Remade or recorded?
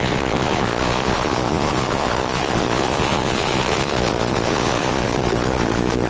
remade